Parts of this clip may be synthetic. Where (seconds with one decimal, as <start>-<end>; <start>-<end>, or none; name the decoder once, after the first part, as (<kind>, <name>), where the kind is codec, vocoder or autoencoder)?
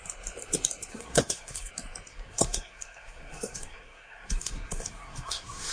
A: 0.9-1.7 (codec, SNAC); 2.1-5.7